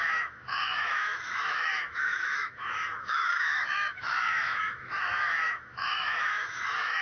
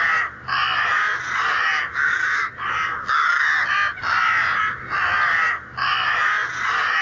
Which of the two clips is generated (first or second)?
first